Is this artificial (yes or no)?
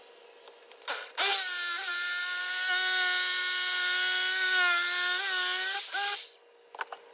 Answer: no